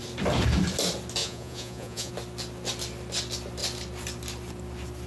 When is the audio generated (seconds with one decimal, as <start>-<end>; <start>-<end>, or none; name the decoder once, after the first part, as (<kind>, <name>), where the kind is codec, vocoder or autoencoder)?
1.2-2.1 (vocoder, Vocos)